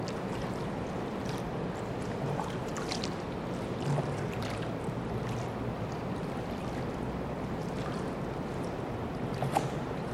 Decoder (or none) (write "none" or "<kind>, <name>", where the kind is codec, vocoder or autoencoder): none